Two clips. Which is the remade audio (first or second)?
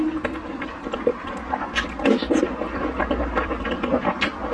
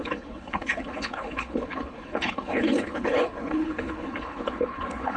second